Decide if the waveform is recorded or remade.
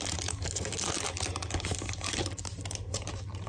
recorded